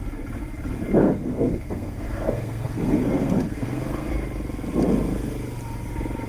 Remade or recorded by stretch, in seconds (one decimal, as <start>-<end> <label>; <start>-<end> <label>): 0.0-1.0 recorded; 1.0-4.1 remade; 4.1-6.3 recorded